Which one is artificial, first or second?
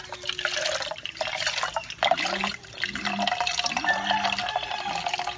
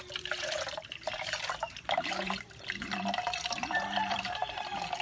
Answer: second